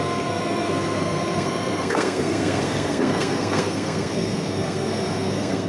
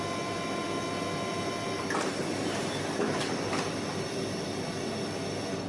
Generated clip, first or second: first